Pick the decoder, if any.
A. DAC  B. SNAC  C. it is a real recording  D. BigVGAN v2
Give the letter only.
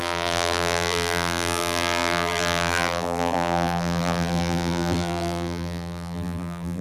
D